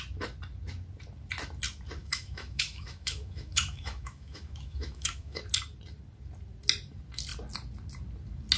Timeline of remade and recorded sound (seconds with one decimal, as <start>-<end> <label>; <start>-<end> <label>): 0.0-2.0 recorded; 2.0-5.4 remade; 5.4-8.6 recorded